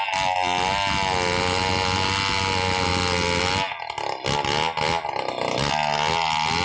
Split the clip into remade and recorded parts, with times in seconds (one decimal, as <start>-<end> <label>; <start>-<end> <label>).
0.0-6.6 recorded